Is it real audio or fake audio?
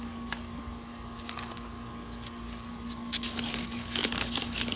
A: fake